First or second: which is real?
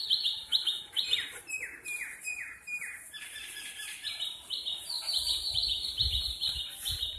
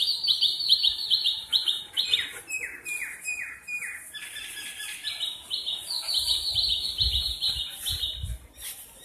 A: second